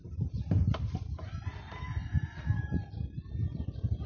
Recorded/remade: recorded